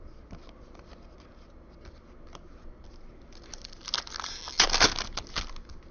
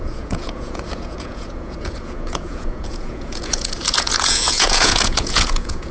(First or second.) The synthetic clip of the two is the second